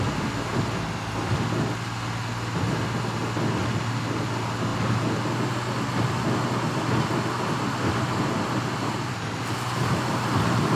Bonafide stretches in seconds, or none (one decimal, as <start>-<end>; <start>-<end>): 0.0-10.8